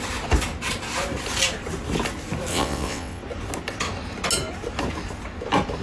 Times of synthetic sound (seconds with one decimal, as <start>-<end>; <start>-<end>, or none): 2.5-3.2